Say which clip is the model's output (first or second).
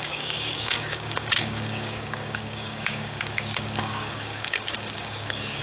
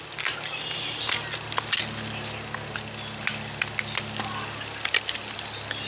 first